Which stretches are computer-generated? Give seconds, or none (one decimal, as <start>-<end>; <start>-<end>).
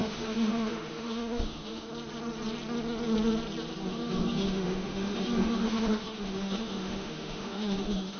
0.0-1.9; 3.9-8.2